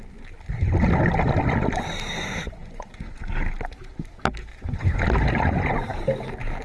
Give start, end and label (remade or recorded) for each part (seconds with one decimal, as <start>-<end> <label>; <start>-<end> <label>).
0.0-2.6 recorded; 2.6-3.3 remade; 3.3-4.5 recorded; 4.5-5.0 remade; 5.0-6.6 recorded